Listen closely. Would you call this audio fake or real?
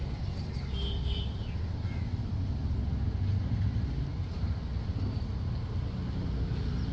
real